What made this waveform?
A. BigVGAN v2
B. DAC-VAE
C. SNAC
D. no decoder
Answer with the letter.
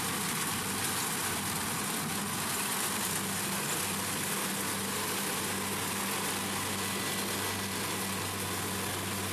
D